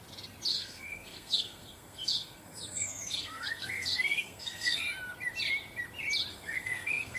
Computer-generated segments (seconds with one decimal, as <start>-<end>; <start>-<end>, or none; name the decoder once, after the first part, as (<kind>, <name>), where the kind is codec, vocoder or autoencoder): 0.5-4.8 (codec, SNAC); 6.3-7.2